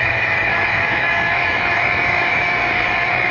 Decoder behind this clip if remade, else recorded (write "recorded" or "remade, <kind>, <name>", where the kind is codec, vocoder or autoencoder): remade, codec, DAC